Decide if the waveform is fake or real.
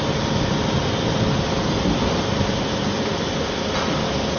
real